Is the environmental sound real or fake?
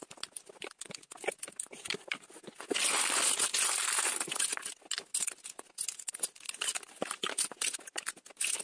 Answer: real